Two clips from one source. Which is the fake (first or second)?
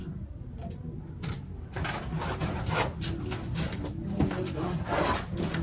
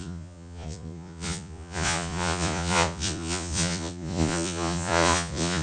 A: second